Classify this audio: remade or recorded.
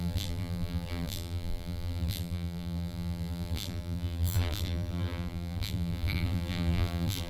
remade